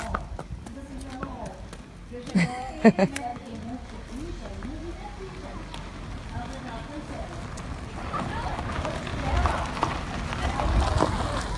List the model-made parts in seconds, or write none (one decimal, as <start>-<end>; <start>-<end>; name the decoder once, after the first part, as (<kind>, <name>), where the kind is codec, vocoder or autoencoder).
none